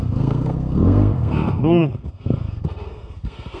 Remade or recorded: remade